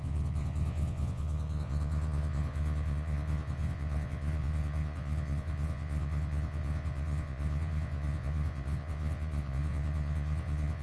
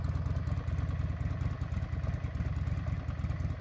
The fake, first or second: first